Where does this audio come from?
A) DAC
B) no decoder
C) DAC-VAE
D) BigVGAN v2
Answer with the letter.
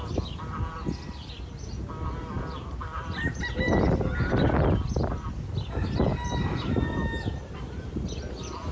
B